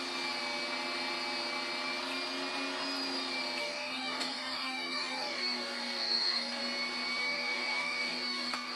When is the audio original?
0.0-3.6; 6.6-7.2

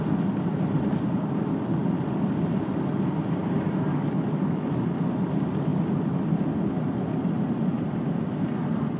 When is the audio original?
0.0-3.9; 4.7-9.0

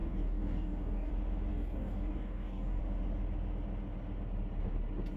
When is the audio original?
1.1-1.5; 2.8-5.2

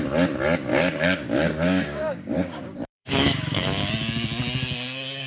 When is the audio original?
0.0-0.7; 3.9-5.3

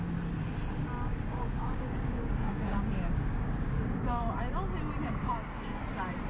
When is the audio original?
0.0-1.1; 4.2-5.0; 5.8-6.3

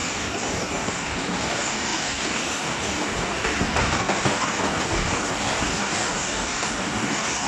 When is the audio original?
none

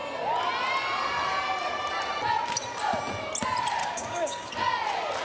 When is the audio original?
0.0-3.8; 4.5-5.2